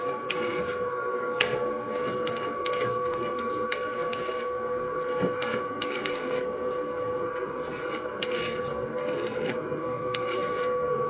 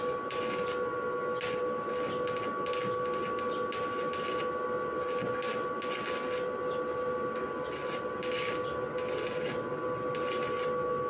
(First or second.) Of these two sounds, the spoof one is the first